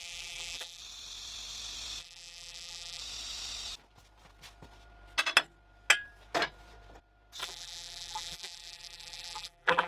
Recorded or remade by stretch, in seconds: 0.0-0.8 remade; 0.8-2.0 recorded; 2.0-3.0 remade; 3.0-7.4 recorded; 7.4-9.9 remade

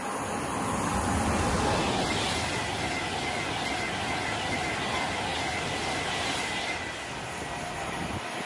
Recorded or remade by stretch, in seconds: 0.0-8.5 recorded